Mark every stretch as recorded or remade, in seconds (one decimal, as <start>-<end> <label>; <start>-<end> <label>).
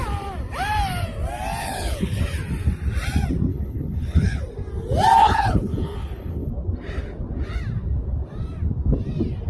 0.0-1.6 recorded; 1.6-2.2 remade; 2.2-3.5 recorded; 3.5-4.4 remade; 4.4-5.2 recorded; 5.2-6.5 remade; 6.5-9.5 recorded